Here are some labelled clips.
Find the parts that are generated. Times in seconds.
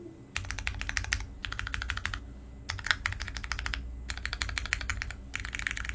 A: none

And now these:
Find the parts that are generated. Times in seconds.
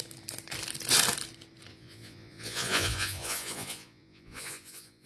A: 1.7-5.1 (vocoder, Vocos)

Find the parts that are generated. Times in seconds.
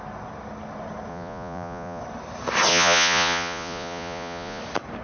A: 1.1-2.0 (vocoder, Vocos); 2.7-4.6